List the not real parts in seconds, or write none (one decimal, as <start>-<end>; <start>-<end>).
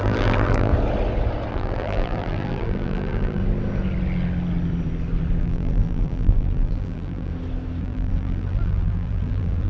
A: 0.0-0.7; 1.5-3.4; 5.4-7.3; 7.8-9.7